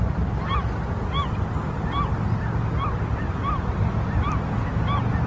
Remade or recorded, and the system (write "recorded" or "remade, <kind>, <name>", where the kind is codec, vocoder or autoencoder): recorded